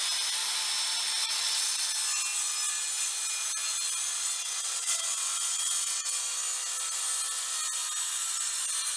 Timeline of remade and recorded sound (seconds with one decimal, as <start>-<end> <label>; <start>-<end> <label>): 0.0-1.2 recorded; 1.2-1.9 remade; 1.9-4.1 recorded; 4.1-6.2 remade; 6.2-9.0 recorded